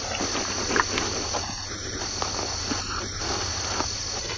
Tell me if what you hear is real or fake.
real